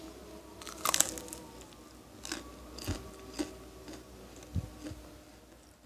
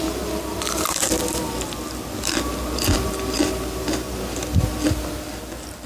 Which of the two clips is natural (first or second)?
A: first